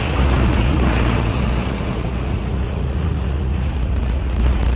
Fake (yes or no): yes